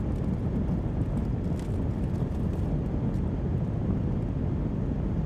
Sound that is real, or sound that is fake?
real